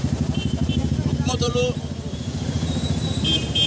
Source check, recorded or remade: remade